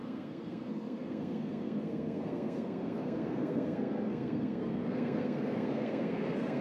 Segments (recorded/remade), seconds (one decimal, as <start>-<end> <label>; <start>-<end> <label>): 0.0-6.6 remade